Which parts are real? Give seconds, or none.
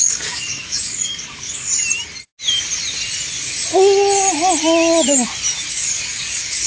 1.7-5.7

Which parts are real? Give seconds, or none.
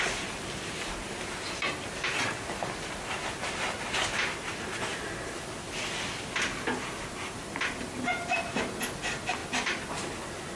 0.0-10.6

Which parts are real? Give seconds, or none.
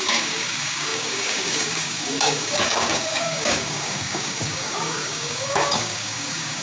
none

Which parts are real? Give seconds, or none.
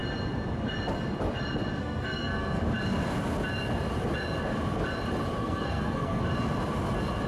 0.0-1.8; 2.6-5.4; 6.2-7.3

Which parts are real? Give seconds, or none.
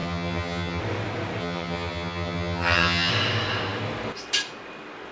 0.8-1.4; 3.1-5.1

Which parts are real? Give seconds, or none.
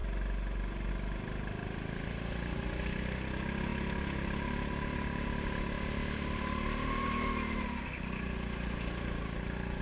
0.0-9.8